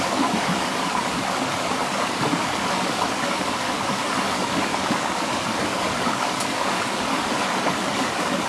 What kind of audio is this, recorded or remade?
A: remade